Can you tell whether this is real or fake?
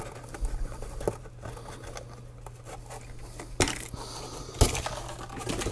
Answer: real